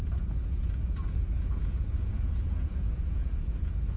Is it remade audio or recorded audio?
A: remade